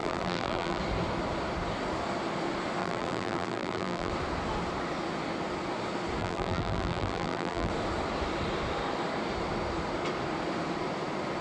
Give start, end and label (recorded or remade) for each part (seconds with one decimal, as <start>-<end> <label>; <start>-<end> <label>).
0.0-0.8 remade; 0.8-2.8 recorded; 2.8-4.1 remade; 4.1-6.2 recorded; 6.2-7.7 remade; 7.7-11.4 recorded